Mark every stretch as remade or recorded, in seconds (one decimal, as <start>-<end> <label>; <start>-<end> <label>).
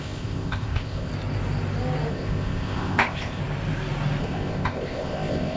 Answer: 0.0-1.1 remade; 1.1-2.1 recorded; 2.1-3.4 remade; 3.4-4.2 recorded; 4.2-5.6 remade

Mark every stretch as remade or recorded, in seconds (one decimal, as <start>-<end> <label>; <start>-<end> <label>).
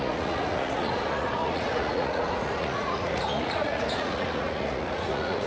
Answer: 0.0-5.5 remade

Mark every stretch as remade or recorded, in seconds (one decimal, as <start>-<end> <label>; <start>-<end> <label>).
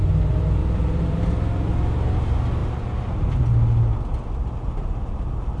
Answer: 0.0-0.6 recorded; 0.6-1.7 remade; 1.7-5.6 recorded